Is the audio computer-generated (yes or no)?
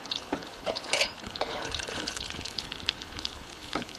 yes